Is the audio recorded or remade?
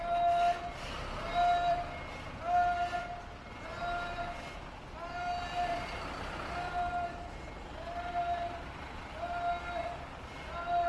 recorded